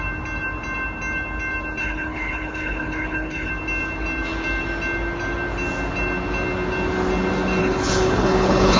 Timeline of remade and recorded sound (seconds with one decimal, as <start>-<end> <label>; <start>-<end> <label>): 0.0-1.8 recorded; 1.8-3.5 remade; 3.5-7.6 recorded; 7.6-8.8 remade